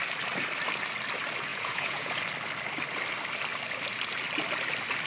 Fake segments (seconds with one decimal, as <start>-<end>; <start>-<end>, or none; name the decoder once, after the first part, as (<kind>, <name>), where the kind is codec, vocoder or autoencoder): 1.5-2.2 (vocoder, Vocos)